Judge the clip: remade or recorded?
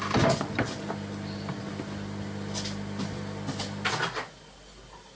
recorded